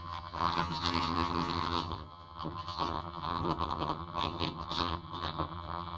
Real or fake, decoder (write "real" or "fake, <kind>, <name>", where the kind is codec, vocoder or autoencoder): fake, vocoder, HiFi-GAN